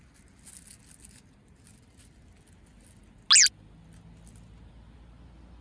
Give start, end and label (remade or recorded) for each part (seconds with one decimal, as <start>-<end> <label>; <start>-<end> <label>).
0.0-5.6 recorded